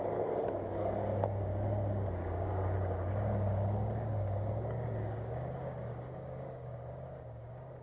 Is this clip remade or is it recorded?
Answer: remade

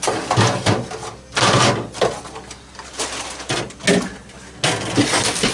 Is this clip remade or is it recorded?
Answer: recorded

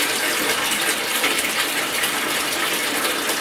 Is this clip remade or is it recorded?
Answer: recorded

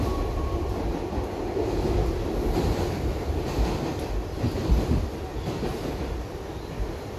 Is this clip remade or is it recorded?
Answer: recorded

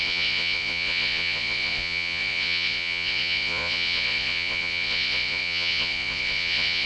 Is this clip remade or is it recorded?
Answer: remade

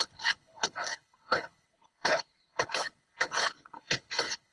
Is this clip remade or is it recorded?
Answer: remade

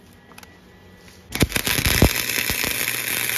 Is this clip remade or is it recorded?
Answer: recorded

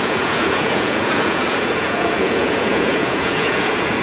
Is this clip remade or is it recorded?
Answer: remade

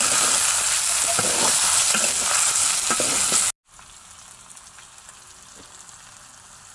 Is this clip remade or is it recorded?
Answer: recorded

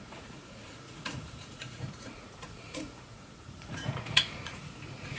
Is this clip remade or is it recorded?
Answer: remade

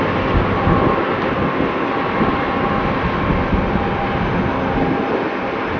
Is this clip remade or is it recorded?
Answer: recorded